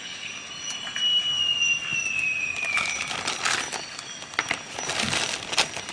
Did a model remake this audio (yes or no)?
no